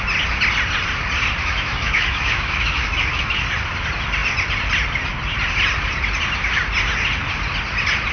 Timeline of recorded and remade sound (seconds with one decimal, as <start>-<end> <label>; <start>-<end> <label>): 0.0-1.4 recorded; 1.4-3.4 remade; 3.4-8.1 recorded